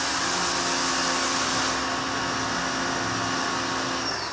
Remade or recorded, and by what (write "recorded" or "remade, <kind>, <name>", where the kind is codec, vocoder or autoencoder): recorded